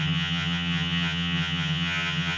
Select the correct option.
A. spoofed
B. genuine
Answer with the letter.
A